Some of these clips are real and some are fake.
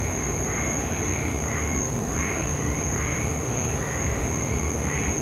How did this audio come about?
fake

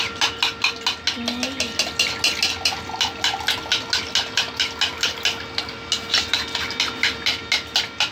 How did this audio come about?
real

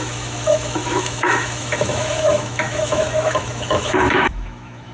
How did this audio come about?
fake